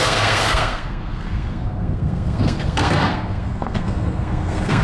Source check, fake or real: fake